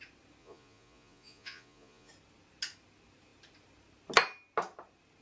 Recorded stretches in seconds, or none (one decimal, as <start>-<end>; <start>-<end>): 0.0-0.4; 2.1-5.2